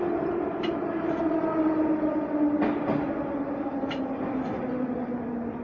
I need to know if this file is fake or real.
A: real